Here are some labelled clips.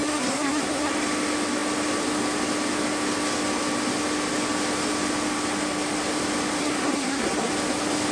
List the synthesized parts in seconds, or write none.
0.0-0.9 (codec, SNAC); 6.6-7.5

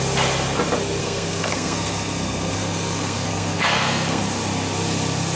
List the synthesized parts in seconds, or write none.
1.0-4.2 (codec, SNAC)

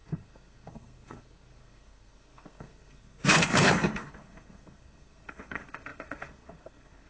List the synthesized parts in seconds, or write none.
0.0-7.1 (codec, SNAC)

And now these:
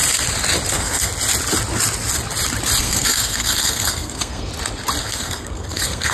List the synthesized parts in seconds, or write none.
0.7-1.1 (codec, SNAC); 2.8-4.5; 5.0-6.1

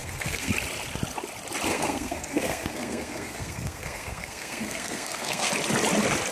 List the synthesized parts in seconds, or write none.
0.0-0.5 (codec, SNAC); 1.7-5.5